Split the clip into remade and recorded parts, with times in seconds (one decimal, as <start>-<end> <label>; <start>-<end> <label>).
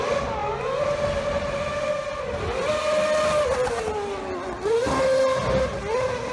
0.0-6.3 recorded